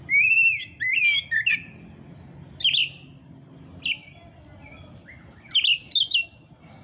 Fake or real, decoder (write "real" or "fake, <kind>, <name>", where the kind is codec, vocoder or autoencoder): real